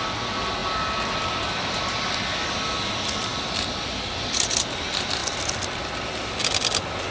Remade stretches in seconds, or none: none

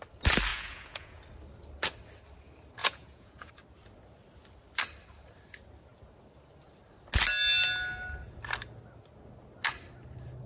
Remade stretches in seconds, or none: 0.5-1.2 (vocoder, Vocos); 2.8-3.5

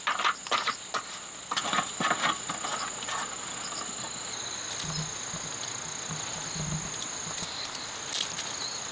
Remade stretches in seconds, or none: none